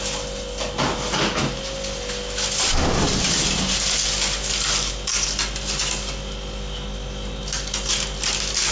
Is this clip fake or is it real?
real